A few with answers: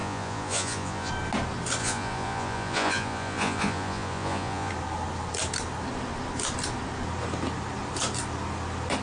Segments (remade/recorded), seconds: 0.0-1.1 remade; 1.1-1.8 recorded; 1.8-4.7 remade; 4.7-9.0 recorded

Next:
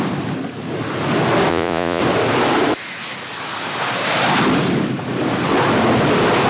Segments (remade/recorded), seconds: 0.0-1.5 recorded; 1.5-2.0 remade; 2.0-6.5 recorded